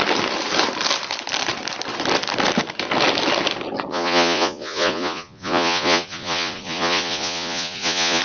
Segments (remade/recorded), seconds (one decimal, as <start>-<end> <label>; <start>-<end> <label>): 0.0-3.9 recorded; 3.9-8.2 remade